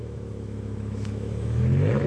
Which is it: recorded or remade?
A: remade